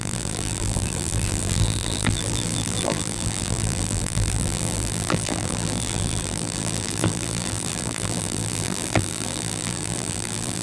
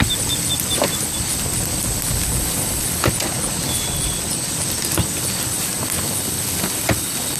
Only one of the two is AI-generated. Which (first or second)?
first